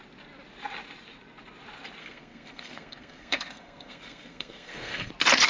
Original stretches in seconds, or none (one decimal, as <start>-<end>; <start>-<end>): 0.0-2.0; 5.1-5.5